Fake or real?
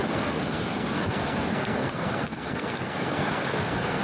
fake